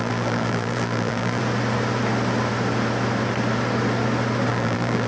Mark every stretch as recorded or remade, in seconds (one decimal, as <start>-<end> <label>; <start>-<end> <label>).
0.0-1.4 remade; 1.4-4.5 recorded; 4.5-5.1 remade